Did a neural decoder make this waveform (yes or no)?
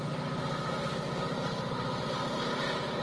no